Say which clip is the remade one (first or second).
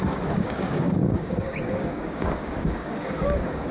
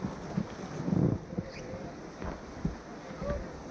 first